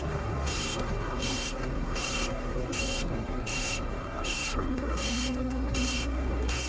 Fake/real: fake